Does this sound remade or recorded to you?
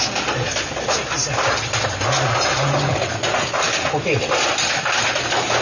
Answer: recorded